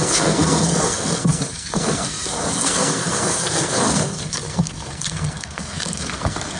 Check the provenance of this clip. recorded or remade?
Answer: remade